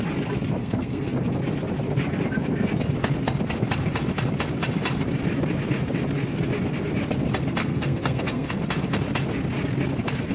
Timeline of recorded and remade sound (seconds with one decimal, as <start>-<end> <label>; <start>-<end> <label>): 0.0-0.6 recorded; 0.6-1.1 remade; 1.1-7.6 recorded; 7.6-8.5 remade; 8.5-10.3 recorded